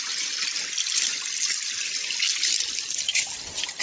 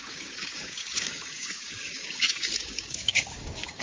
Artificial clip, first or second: second